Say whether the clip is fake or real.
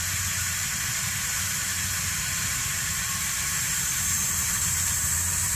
fake